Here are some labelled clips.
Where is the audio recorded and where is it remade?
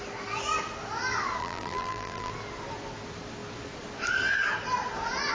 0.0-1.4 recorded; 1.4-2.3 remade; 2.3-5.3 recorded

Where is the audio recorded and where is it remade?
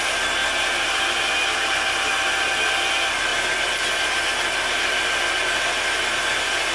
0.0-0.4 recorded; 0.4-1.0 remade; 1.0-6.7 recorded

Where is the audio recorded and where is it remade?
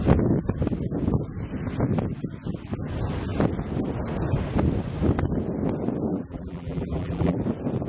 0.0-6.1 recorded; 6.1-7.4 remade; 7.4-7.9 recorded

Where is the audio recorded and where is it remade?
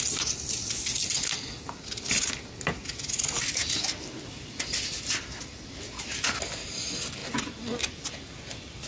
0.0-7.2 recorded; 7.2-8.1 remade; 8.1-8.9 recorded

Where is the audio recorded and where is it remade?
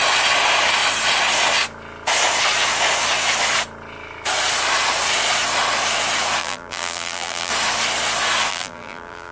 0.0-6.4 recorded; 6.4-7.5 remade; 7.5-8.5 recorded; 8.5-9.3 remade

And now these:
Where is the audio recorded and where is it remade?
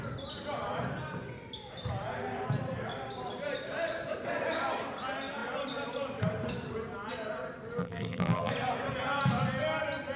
0.0-7.8 recorded; 7.8-8.5 remade; 8.5-10.2 recorded